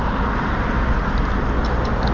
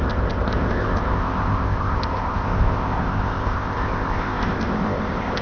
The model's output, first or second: second